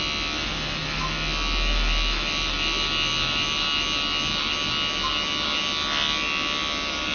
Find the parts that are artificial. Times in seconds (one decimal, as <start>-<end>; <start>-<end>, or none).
none